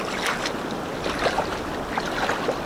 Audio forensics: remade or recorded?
recorded